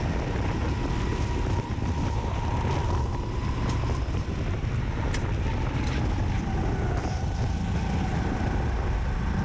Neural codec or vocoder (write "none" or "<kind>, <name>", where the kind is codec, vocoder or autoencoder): none